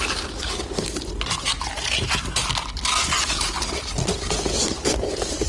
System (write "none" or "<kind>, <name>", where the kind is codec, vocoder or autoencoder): none